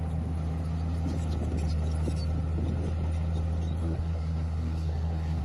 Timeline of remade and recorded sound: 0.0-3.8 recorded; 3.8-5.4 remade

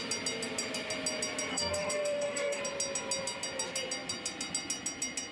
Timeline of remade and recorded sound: 0.0-1.5 recorded; 1.5-2.6 remade; 2.6-5.3 recorded

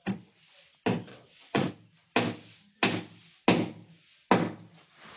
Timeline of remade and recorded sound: 0.0-1.1 recorded; 1.1-1.7 remade; 1.7-5.2 recorded

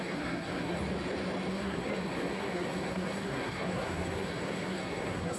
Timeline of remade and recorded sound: 0.0-0.8 remade; 0.8-1.5 recorded; 1.5-5.4 remade

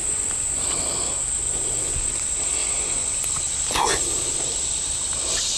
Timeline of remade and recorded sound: 0.0-0.6 remade; 0.6-2.6 recorded; 2.6-3.3 remade; 3.3-5.6 recorded